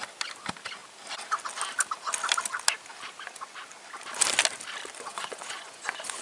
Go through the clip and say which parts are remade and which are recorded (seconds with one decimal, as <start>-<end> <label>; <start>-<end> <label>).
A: 0.0-5.1 recorded; 5.1-6.2 remade